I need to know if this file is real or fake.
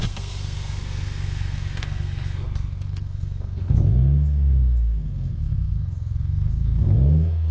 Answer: fake